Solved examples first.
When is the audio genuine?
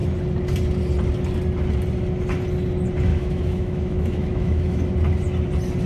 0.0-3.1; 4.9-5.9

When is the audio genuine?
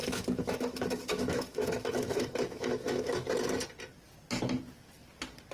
3.3-5.5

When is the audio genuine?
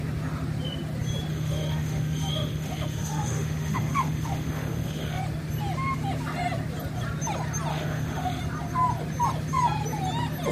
0.0-1.3; 5.2-7.7; 8.4-10.5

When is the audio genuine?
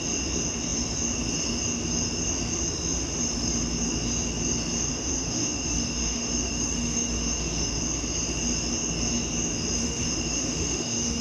0.0-4.9; 7.8-9.8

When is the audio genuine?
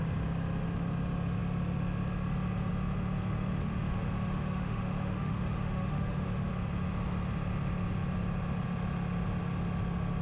0.0-3.6; 6.5-10.2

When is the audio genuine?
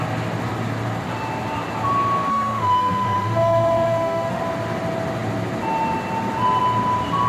0.0-2.3; 4.4-7.3